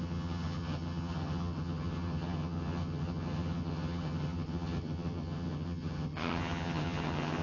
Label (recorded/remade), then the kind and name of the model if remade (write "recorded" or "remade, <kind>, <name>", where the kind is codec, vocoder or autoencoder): remade, vocoder, HiFi-GAN